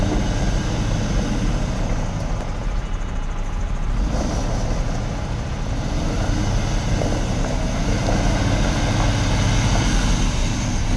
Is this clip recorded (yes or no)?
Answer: yes